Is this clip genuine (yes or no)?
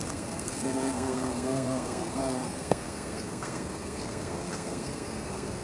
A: no